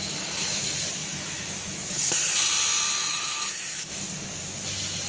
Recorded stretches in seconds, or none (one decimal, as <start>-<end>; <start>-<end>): 0.6-1.0; 2.1-3.0; 4.0-5.1